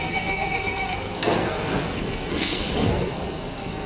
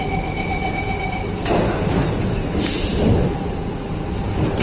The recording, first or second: second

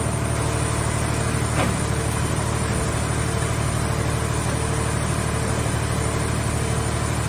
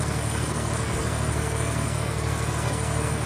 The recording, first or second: first